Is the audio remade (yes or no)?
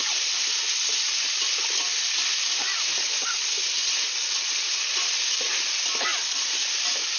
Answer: no